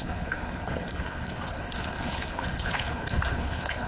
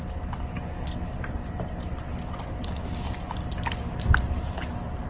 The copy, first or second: first